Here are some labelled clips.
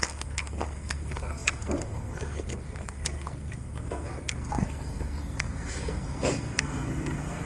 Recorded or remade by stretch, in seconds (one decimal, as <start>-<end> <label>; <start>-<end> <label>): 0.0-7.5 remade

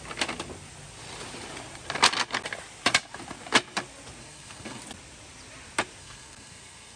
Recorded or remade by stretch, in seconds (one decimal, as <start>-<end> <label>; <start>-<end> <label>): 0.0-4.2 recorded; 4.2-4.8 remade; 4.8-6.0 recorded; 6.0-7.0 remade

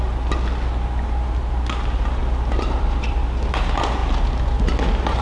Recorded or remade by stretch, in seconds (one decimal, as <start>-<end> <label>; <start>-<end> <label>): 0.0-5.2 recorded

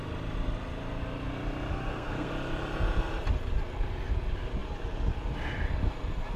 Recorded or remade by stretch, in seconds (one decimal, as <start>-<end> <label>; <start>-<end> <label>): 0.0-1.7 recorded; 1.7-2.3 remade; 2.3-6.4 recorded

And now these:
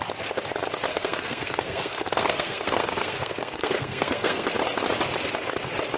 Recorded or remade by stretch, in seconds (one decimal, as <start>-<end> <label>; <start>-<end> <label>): 0.0-0.9 recorded; 0.9-4.5 remade; 4.5-6.0 recorded

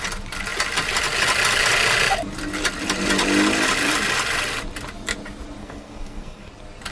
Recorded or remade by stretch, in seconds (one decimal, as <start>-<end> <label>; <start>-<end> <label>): 0.0-5.6 recorded; 5.6-6.5 remade; 6.5-6.9 recorded

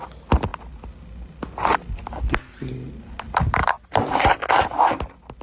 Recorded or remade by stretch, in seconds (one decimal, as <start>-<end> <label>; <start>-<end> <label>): 0.0-3.6 recorded; 3.6-4.5 remade; 4.5-5.4 recorded